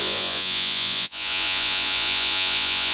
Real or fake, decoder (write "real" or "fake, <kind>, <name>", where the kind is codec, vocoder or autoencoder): fake, vocoder, Vocos